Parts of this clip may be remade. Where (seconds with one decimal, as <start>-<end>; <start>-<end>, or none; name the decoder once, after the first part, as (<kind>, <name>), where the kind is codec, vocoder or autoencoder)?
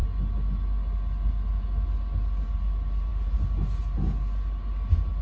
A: none